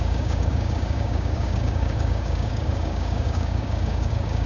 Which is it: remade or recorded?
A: remade